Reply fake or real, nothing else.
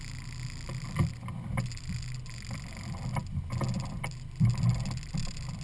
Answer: real